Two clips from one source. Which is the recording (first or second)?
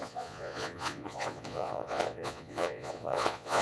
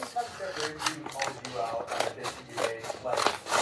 second